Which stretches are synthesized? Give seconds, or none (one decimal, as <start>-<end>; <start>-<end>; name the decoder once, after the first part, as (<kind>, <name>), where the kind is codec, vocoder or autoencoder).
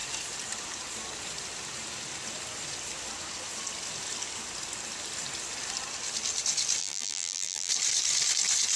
6.8-7.7 (vocoder, BigVGAN v2)